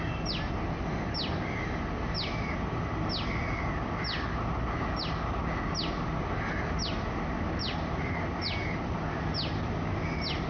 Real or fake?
real